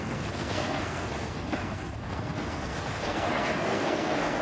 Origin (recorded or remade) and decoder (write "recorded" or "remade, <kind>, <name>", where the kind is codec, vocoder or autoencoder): remade, codec, SNAC